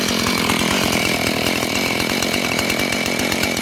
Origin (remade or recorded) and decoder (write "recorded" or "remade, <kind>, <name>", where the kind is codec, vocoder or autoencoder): remade, vocoder, BigVGAN v2